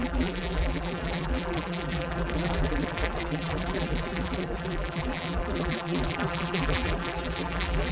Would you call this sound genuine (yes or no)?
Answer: no